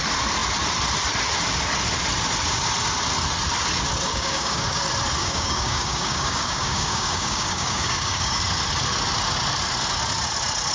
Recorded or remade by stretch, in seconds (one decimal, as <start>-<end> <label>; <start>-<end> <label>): 0.0-4.1 recorded; 4.1-4.8 remade; 4.8-5.2 recorded; 5.2-8.4 remade; 8.4-10.7 recorded